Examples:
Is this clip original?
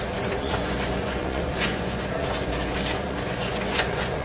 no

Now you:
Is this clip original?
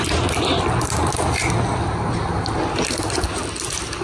yes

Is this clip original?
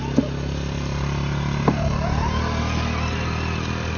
yes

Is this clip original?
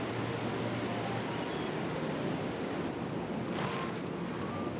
yes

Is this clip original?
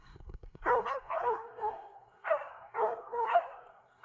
no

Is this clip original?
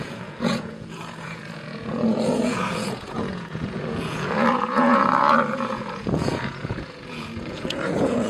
no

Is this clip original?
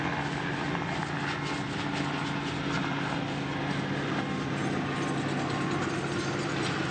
yes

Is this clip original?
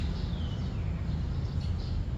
yes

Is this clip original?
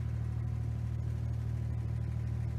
yes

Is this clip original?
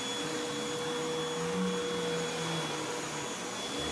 yes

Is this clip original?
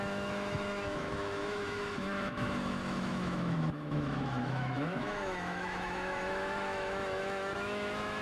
no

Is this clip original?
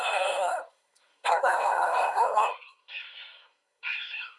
no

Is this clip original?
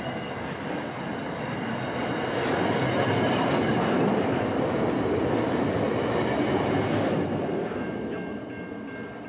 yes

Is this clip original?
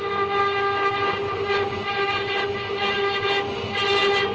yes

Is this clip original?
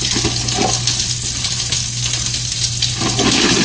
yes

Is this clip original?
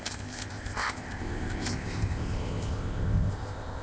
no